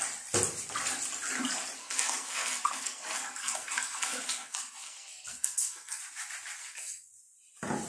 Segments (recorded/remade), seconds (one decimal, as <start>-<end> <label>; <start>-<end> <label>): 0.0-1.8 recorded; 1.8-6.0 remade; 6.0-6.6 recorded; 6.6-7.1 remade; 7.1-7.9 recorded